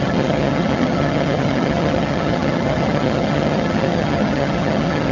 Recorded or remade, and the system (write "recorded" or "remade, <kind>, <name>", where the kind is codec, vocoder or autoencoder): remade, vocoder, HiFi-GAN